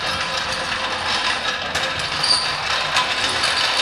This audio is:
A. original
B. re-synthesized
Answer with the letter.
A